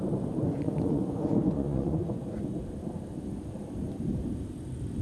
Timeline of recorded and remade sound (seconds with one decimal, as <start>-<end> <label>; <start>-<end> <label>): 0.0-0.4 recorded; 0.4-2.2 remade; 2.2-5.0 recorded